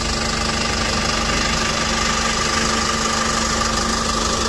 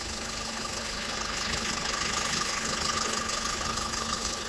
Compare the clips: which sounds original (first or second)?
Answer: first